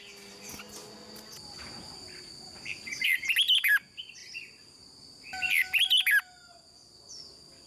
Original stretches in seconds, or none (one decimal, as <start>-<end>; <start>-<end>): 0.0-2.7; 3.3-7.7